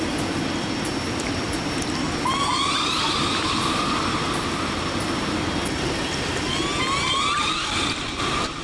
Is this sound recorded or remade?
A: recorded